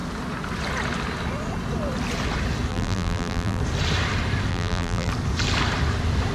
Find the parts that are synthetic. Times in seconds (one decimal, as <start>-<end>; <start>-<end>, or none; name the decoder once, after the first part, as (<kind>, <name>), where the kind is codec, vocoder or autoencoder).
2.7-3.6 (vocoder, BigVGAN v2); 4.5-5.1